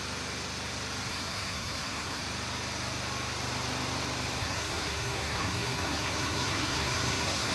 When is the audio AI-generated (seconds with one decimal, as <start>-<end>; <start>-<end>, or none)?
1.1-2.2; 4.4-7.5